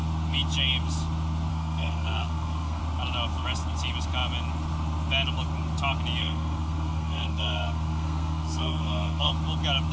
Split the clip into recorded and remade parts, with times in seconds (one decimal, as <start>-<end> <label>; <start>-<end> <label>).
0.0-1.5 recorded; 1.5-2.8 remade; 2.8-6.2 recorded; 6.2-9.3 remade; 9.3-9.9 recorded